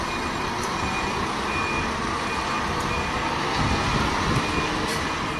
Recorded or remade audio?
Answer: recorded